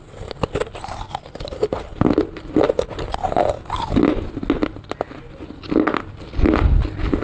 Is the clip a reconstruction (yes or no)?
no